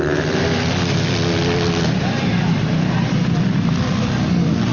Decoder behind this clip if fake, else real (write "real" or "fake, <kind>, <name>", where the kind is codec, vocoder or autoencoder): real